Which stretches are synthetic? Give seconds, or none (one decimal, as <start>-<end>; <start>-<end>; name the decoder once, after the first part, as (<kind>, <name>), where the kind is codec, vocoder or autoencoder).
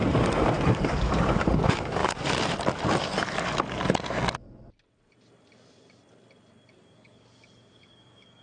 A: 0.7-2.0 (codec, DAC); 6.8-8.4